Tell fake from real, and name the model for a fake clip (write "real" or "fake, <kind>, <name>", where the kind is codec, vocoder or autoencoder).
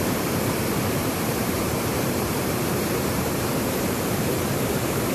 fake, vocoder, BigVGAN v2